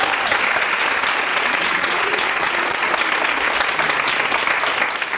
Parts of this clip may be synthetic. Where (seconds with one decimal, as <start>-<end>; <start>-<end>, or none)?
1.3-2.9